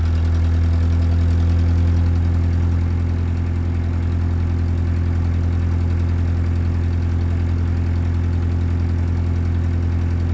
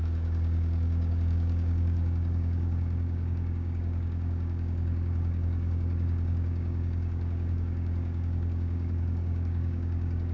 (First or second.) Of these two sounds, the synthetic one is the second